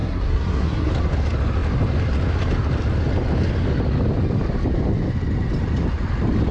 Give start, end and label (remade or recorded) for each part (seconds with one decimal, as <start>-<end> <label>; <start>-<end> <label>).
0.0-0.9 remade; 0.9-6.5 recorded